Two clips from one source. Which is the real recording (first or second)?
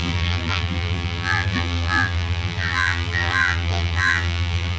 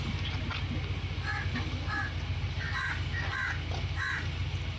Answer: second